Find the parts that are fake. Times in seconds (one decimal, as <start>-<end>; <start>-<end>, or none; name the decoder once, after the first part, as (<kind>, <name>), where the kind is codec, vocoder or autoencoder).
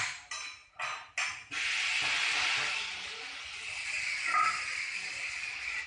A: none